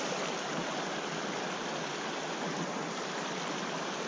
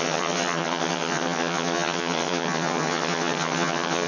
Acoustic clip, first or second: first